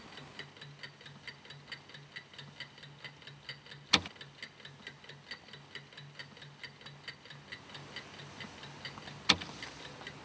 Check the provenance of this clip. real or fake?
real